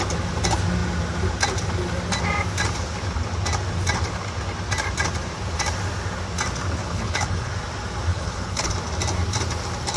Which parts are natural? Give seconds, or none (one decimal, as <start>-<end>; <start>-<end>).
0.0-6.8; 7.5-8.1; 8.7-10.0